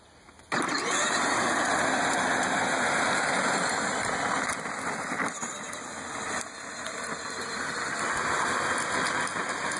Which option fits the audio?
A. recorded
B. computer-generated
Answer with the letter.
A